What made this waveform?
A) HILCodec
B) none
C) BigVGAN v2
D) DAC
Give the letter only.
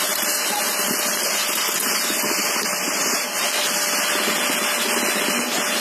B